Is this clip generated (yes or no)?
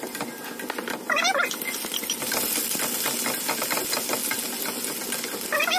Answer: no